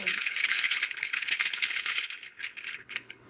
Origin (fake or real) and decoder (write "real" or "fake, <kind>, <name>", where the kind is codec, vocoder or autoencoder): fake, codec, HILCodec